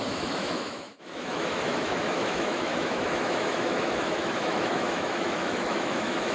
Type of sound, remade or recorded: remade